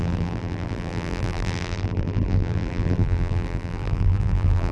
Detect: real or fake fake